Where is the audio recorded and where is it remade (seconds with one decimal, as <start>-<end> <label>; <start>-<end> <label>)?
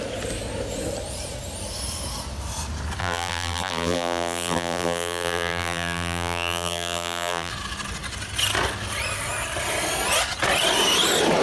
0.0-3.0 recorded; 3.0-7.5 remade; 7.5-11.4 recorded